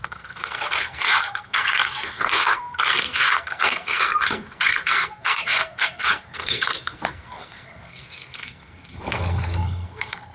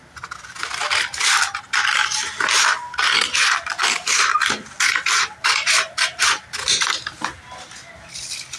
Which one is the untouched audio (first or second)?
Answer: second